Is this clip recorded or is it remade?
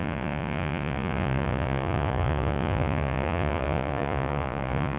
remade